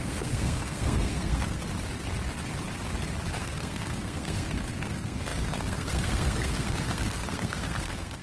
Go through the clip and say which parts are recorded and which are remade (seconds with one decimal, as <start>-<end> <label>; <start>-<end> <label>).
0.0-1.6 remade; 1.6-3.4 recorded; 3.4-8.2 remade